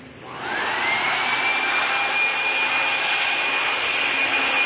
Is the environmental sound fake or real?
real